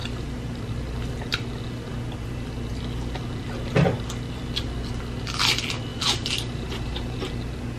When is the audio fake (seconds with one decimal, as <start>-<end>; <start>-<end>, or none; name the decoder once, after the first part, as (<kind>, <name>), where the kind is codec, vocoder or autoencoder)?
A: 0.0-0.6 (vocoder, BigVGAN v2); 5.9-7.2